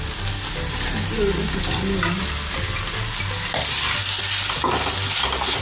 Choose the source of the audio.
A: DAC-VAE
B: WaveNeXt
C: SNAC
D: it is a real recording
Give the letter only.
D